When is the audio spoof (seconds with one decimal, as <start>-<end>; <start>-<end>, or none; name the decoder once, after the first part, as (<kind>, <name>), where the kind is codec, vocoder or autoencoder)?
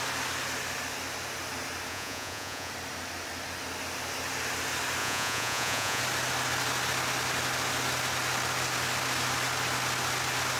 1.9-2.7 (vocoder, Vocos); 5.0-6.0